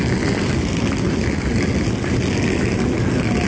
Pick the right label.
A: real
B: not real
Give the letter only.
A